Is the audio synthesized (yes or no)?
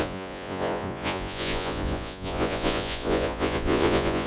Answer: yes